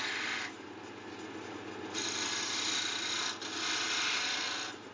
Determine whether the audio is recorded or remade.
recorded